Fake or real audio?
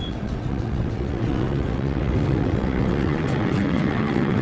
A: fake